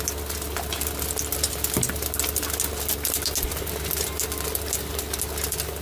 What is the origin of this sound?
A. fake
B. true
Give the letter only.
B